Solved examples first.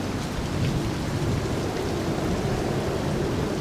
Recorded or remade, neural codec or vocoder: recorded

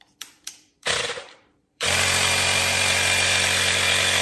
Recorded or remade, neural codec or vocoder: remade, vocoder, BigVGAN v2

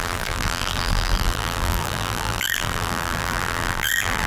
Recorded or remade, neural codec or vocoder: remade, vocoder, BigVGAN v2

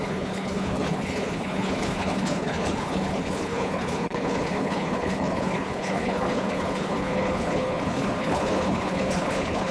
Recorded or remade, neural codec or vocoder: remade, codec, HILCodec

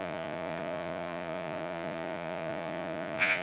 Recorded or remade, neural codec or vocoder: remade, vocoder, Vocos